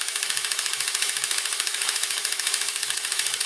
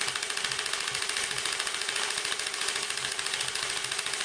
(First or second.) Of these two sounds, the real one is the second